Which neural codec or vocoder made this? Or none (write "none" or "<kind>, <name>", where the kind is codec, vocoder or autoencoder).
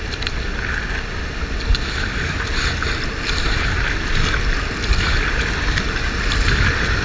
none